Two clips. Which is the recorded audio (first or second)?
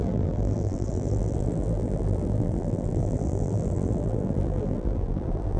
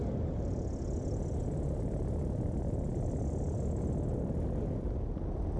second